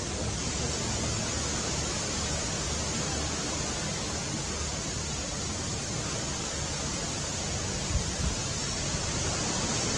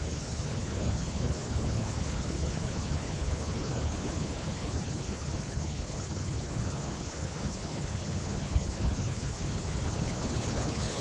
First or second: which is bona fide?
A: first